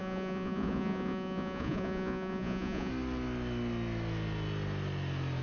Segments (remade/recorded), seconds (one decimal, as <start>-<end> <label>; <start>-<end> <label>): 0.0-2.9 remade; 2.9-5.4 recorded